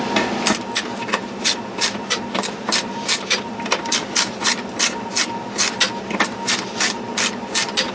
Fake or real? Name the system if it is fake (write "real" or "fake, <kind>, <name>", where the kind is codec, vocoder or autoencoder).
real